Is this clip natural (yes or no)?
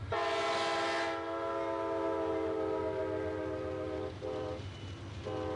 yes